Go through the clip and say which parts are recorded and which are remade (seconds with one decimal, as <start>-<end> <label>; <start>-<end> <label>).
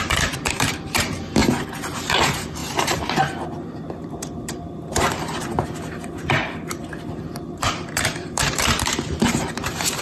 0.0-10.0 remade